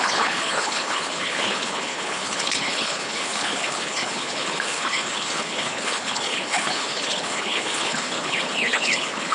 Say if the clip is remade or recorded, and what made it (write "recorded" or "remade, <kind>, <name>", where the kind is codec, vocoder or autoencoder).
remade, codec, HILCodec